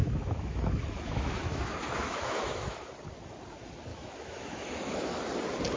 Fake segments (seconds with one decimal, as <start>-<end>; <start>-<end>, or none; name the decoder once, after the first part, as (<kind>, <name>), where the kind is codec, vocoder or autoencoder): 0.0-2.9 (autoencoder, DAC-VAE); 3.9-5.2

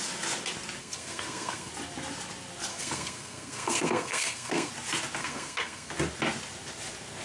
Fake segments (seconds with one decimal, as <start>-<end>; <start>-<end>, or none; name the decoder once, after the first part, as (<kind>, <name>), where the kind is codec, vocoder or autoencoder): 0.8-1.7 (codec, SNAC); 2.7-4.7; 5.2-5.9